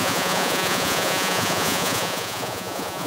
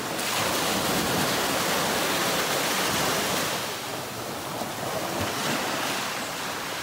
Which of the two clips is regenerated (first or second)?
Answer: first